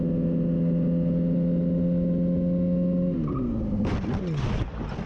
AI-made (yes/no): no